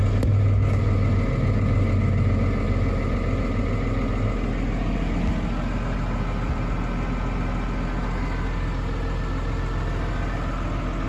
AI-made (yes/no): no